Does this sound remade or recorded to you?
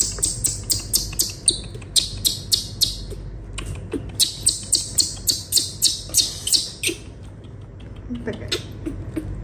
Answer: recorded